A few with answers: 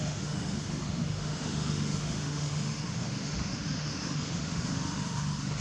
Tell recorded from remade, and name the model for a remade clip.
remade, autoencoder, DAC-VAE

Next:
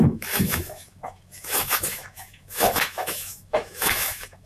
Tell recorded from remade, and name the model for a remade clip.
remade, autoencoder, DAC-VAE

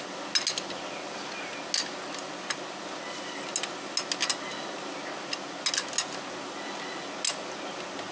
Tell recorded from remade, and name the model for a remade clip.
recorded